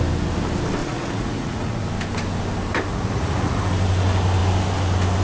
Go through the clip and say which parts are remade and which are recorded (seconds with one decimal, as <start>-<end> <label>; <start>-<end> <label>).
0.0-0.8 recorded; 0.8-1.8 remade; 1.8-2.9 recorded; 2.9-3.6 remade; 3.6-5.2 recorded